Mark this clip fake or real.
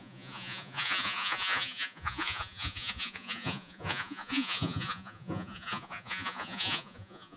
fake